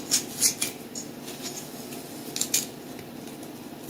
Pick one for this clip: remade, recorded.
recorded